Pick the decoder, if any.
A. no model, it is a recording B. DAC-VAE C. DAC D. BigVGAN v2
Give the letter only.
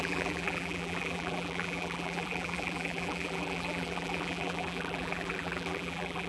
D